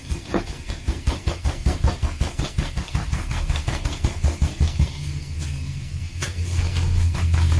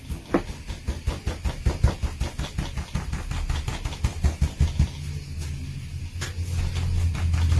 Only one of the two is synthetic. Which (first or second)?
first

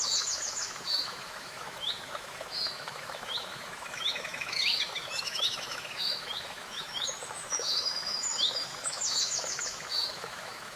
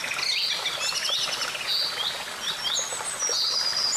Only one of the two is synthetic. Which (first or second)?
first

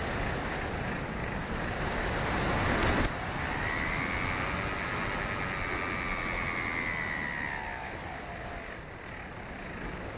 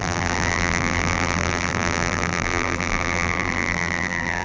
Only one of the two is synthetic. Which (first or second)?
second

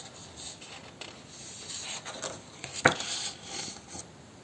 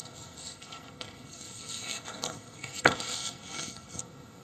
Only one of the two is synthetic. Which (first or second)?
second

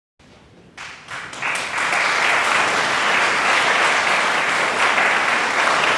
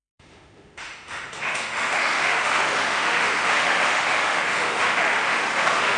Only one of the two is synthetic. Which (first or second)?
second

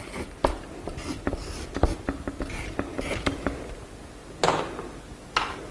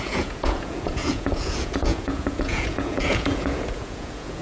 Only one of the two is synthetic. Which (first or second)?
second